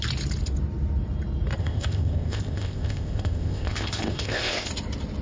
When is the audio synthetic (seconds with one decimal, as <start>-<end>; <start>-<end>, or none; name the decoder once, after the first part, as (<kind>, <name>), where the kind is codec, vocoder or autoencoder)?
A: 1.6-4.7 (codec, ZipCodec)